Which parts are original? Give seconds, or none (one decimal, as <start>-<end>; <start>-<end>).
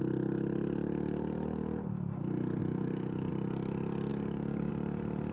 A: 0.0-2.6; 3.3-4.1; 4.7-5.3